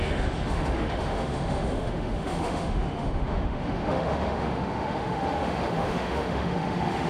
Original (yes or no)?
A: no